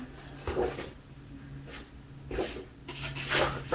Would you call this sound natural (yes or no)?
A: yes